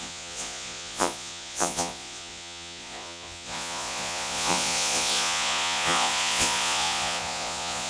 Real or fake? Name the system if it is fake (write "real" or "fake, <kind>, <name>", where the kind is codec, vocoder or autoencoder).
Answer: fake, vocoder, Vocos